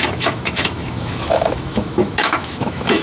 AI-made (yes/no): yes